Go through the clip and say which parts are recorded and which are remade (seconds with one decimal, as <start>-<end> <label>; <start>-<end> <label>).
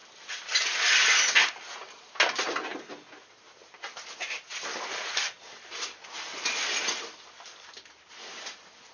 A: 0.0-2.7 recorded; 2.7-3.3 remade; 3.3-8.9 recorded